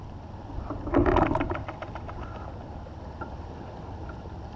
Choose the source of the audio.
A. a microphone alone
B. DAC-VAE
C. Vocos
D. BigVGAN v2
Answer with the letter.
A